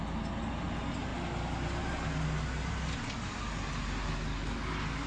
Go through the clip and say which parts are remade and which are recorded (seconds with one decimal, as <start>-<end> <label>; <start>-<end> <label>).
0.0-4.3 recorded; 4.3-5.1 remade